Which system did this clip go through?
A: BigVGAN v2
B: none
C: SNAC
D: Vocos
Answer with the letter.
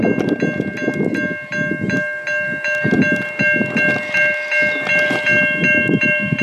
B